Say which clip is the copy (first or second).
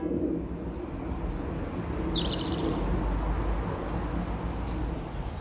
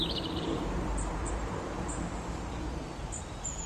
second